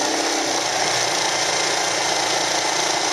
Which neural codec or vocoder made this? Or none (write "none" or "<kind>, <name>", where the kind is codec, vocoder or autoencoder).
none